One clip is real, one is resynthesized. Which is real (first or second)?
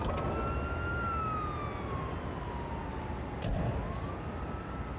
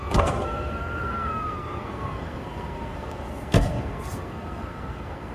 first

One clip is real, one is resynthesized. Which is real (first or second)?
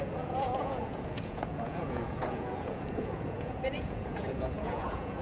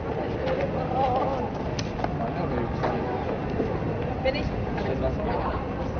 second